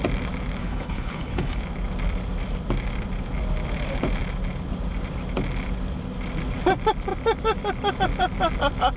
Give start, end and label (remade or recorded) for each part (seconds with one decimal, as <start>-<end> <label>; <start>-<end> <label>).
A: 0.0-0.6 recorded; 0.6-1.6 remade; 1.6-9.0 recorded